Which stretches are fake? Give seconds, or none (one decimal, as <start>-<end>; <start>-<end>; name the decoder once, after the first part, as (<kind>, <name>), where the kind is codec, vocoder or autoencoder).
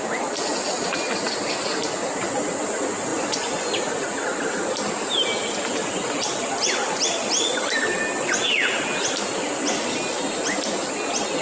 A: 3.1-3.7 (vocoder, Vocos)